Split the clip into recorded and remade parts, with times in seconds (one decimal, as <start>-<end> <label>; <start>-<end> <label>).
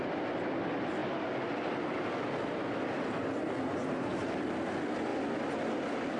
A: 0.0-6.2 recorded